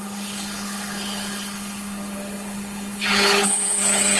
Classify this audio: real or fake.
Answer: fake